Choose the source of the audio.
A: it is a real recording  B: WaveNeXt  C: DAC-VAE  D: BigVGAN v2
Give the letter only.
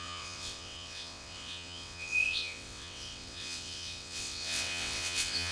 B